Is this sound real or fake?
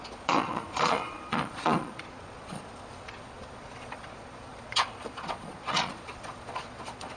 fake